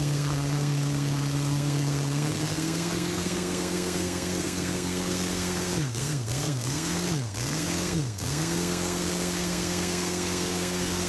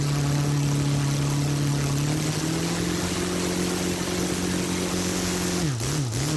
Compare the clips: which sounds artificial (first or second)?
first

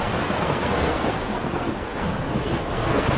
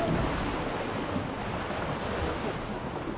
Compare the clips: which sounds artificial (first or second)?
first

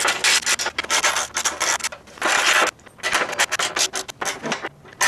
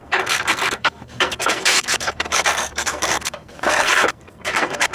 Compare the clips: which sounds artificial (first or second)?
second